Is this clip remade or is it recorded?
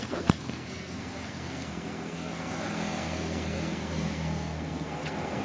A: remade